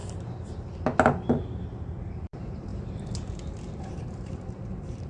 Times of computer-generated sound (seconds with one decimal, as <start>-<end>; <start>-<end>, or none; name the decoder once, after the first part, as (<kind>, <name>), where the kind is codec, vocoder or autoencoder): 2.1-2.7 (vocoder, BigVGAN v2); 3.9-5.1